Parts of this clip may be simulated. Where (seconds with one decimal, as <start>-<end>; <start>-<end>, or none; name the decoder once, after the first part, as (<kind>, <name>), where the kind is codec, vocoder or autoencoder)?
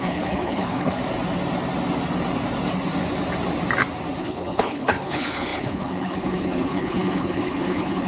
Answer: 0.0-1.0 (codec, HILCodec); 4.2-8.1